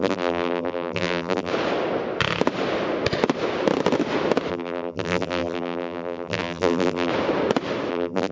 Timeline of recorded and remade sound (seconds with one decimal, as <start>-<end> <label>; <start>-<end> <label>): 0.0-1.5 remade; 1.5-4.5 recorded; 4.5-7.1 remade; 7.1-7.9 recorded; 7.9-8.3 remade